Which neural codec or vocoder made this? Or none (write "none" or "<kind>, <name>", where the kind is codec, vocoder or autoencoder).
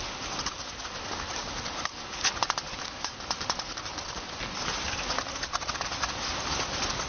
none